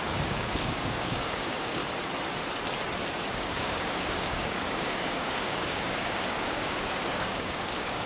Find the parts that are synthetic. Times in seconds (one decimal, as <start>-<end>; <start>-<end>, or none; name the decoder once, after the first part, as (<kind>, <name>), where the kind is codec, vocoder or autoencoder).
0.0-1.8 (codec, DAC); 3.3-8.1